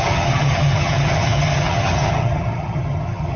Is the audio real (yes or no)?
no